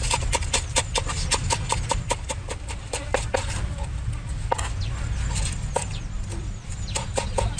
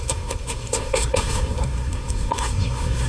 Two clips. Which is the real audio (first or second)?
first